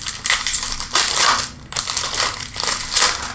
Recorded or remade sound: recorded